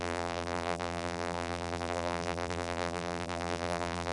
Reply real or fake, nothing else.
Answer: fake